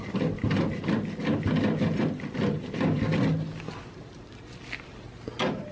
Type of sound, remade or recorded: recorded